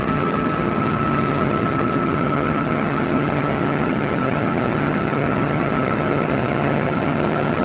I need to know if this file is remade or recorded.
remade